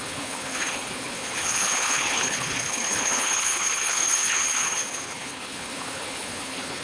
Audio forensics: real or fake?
fake